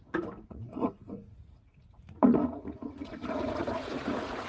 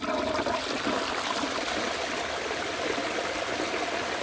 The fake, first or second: first